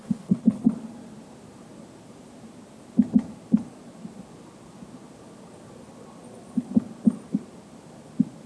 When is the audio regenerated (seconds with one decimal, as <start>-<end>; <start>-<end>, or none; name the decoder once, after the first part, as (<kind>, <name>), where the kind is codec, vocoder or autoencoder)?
0.0-0.7 (codec, HILCodec)